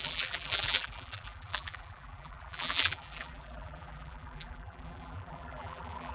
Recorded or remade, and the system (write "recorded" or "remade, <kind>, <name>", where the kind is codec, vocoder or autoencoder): remade, vocoder, BigVGAN v2